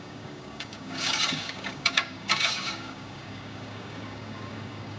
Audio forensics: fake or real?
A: fake